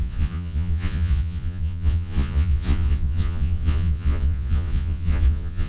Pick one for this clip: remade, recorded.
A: remade